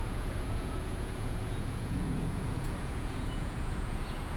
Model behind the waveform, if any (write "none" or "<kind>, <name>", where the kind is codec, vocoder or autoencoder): vocoder, Vocos